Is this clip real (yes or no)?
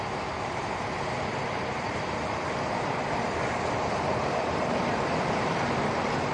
no